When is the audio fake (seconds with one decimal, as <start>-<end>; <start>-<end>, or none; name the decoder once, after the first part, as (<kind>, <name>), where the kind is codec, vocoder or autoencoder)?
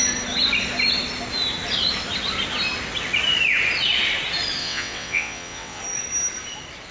4.6-5.8 (vocoder, WaveNeXt)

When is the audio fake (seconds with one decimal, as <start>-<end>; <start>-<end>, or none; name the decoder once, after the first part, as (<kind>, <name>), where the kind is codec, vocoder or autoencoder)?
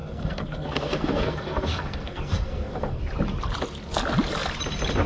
0.0-3.0 (codec, SNAC)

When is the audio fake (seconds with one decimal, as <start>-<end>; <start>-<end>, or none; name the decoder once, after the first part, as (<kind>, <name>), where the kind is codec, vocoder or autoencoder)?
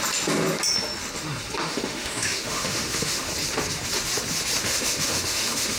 1.6-3.3 (autoencoder, DAC-VAE); 4.6-5.8